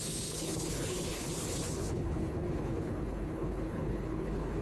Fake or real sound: fake